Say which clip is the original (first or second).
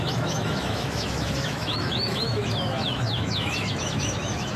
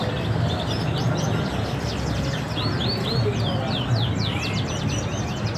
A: second